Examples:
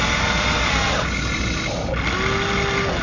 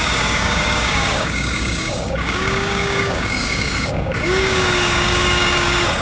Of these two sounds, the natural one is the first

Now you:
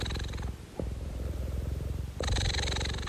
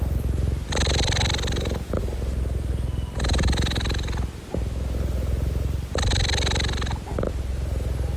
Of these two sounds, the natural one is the second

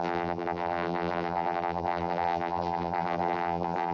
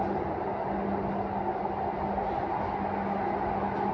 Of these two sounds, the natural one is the second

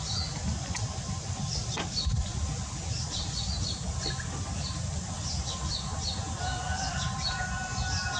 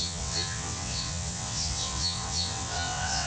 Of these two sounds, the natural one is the first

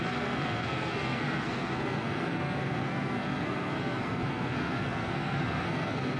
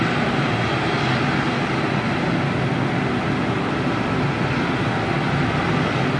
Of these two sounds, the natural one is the second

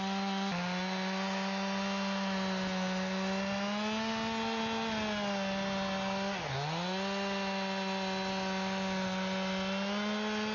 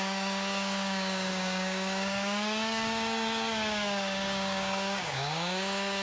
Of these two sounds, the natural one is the first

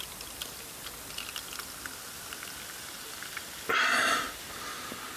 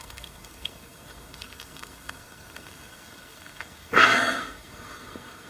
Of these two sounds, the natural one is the first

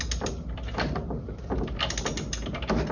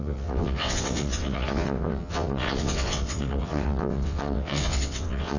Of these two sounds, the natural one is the first